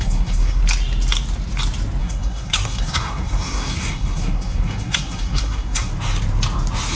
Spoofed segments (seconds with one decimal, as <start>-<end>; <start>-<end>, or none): 0.0-0.6; 2.0-5.9